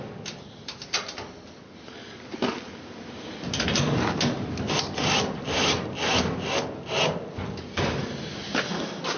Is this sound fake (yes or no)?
no